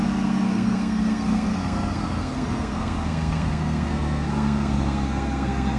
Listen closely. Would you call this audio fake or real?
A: fake